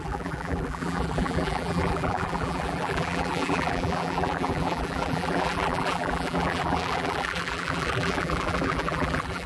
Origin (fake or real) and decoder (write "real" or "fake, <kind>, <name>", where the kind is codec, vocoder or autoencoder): fake, vocoder, BigVGAN v2